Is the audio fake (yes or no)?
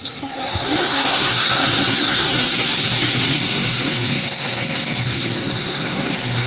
yes